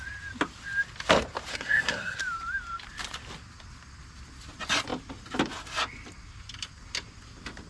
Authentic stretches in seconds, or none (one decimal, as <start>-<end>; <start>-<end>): 0.0-1.5; 2.2-7.7